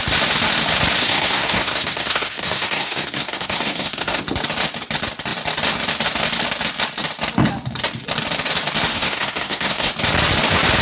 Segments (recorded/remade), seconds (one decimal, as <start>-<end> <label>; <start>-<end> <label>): 0.0-1.0 recorded; 1.0-4.2 remade; 4.2-8.9 recorded; 8.9-9.9 remade; 9.9-10.8 recorded

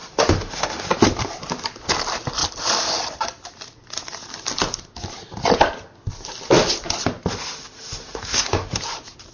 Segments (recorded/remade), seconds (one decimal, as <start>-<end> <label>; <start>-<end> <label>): 0.0-0.9 remade; 0.9-7.3 recorded; 7.3-8.8 remade; 8.8-9.3 recorded

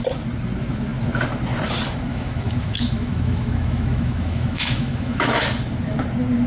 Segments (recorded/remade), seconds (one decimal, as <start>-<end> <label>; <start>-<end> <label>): 0.0-2.1 recorded; 2.1-5.4 remade; 5.4-6.5 recorded

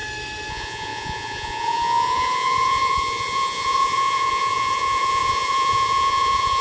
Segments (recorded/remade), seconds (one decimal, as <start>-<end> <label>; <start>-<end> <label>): 0.0-0.5 recorded; 0.5-6.6 remade

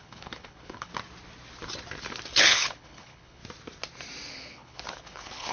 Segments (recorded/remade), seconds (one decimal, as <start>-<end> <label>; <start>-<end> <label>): 0.0-0.9 remade; 0.9-2.4 recorded; 2.4-3.4 remade; 3.4-4.3 recorded; 4.3-5.5 remade